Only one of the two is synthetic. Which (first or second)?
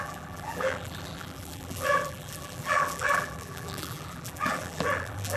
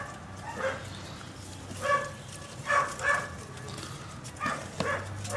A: first